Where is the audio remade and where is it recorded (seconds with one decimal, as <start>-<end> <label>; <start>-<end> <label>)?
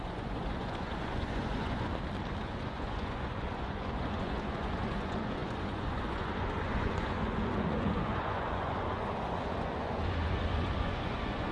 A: 0.0-1.9 remade; 1.9-2.4 recorded; 2.4-11.5 remade